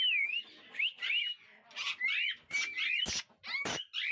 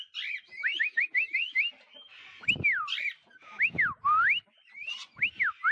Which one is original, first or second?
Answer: first